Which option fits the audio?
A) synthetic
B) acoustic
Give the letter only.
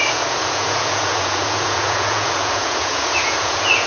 A